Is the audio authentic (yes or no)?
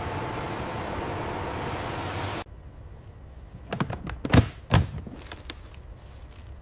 yes